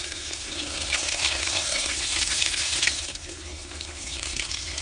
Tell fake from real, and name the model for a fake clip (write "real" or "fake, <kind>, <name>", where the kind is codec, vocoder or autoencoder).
fake, codec, SNAC